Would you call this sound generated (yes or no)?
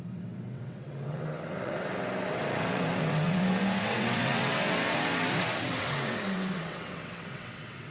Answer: yes